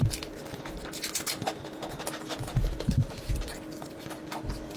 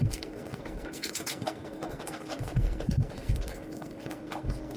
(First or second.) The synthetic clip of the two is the second